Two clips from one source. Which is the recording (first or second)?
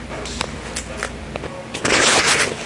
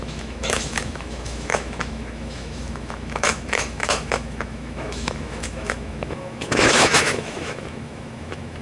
first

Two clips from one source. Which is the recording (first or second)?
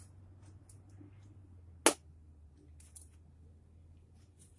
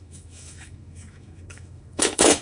first